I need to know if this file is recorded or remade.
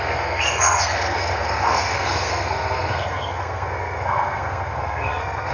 remade